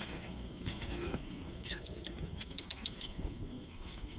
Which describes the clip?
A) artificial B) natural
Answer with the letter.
A